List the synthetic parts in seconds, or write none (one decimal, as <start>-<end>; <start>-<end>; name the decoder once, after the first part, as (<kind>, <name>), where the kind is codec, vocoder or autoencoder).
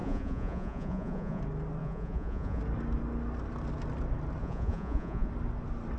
0.0-1.4 (vocoder, Vocos); 1.8-2.6; 4.4-5.3